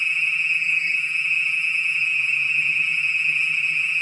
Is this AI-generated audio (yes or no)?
yes